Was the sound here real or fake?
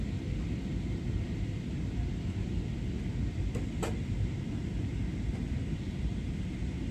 fake